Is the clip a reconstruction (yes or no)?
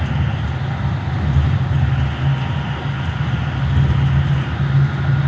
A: no